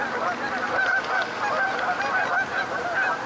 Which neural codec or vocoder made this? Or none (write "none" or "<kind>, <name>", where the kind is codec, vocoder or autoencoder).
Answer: none